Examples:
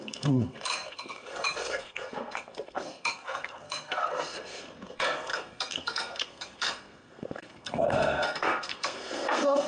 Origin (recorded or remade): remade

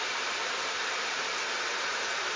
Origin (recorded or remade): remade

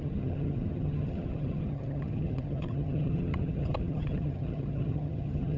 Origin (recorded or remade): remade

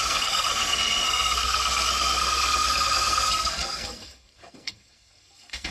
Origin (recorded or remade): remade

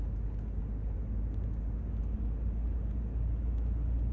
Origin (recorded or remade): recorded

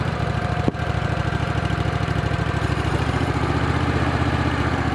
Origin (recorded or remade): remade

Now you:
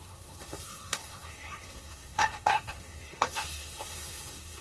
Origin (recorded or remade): remade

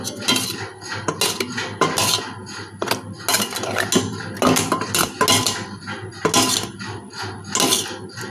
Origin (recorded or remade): recorded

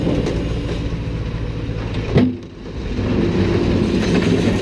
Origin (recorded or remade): recorded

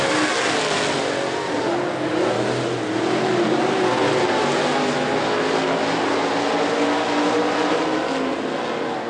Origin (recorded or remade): recorded